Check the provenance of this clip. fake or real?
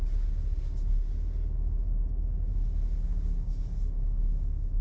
real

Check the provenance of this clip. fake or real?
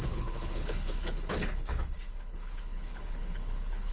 fake